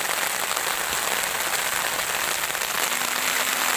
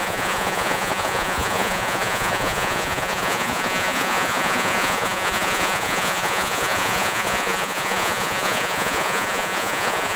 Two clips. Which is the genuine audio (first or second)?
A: first